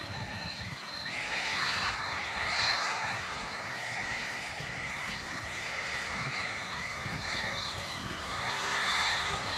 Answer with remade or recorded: remade